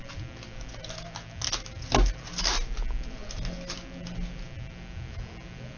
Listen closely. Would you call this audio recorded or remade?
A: recorded